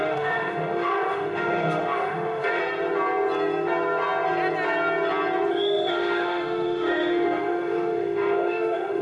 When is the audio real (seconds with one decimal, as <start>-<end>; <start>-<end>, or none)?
2.6-5.5